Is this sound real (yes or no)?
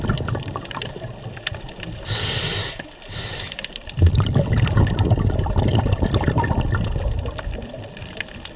no